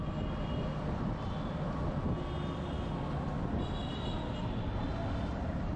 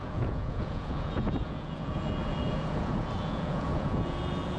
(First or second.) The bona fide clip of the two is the first